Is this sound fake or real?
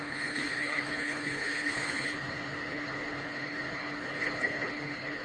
fake